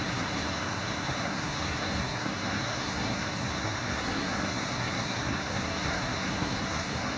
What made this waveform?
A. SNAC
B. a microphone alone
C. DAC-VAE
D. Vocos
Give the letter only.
A